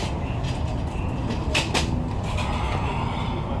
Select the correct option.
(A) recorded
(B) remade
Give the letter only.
A